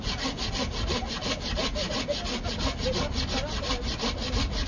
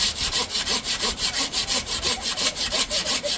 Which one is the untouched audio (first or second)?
first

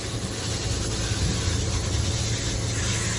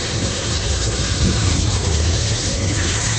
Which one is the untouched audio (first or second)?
first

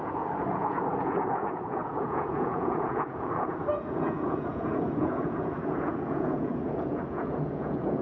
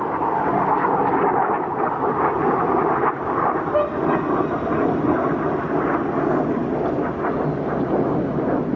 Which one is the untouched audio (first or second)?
second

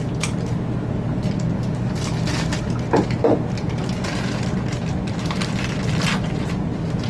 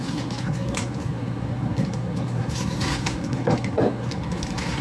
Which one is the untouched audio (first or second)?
first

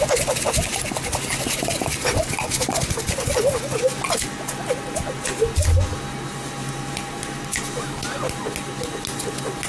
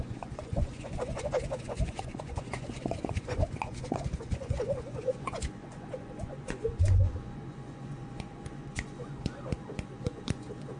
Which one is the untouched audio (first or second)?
first